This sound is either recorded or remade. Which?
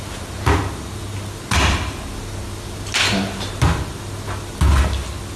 recorded